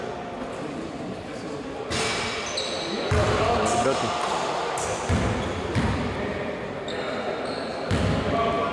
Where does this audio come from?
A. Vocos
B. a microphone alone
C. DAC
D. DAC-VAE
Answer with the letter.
B